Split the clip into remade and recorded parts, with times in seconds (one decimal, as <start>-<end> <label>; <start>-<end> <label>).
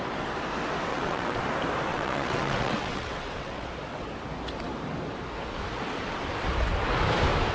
0.0-0.9 recorded; 0.9-1.4 remade; 1.4-1.9 recorded; 1.9-3.7 remade; 3.7-7.5 recorded